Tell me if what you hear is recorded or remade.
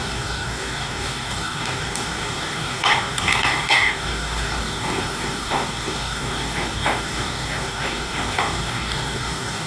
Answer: remade